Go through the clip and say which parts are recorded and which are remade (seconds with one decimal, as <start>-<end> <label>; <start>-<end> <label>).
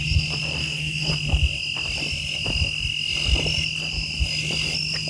0.0-0.6 recorded; 0.6-1.1 remade; 1.1-5.1 recorded